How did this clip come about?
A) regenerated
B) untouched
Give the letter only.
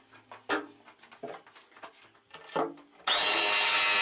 B